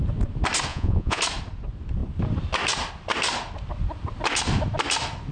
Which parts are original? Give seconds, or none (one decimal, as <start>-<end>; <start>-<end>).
0.0-0.7; 1.2-5.3